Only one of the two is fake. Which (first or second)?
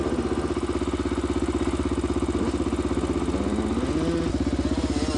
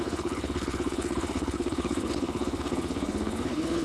second